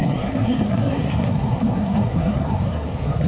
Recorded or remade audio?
remade